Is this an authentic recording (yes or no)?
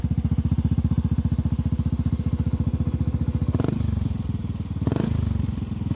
yes